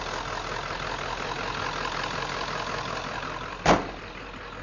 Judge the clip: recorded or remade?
recorded